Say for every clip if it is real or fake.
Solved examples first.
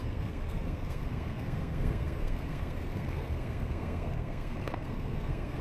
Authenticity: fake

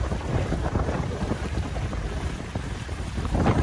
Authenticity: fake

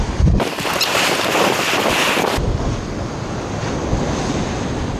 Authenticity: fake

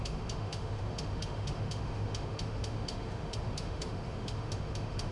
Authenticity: fake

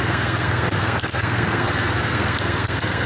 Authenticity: fake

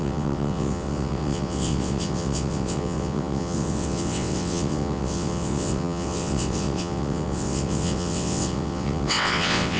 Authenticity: fake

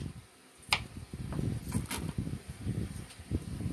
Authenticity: real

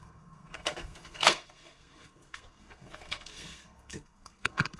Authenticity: fake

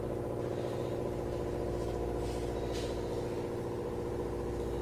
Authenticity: real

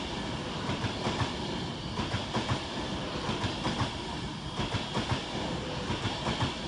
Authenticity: real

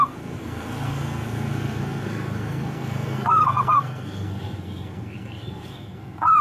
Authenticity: fake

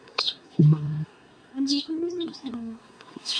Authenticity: fake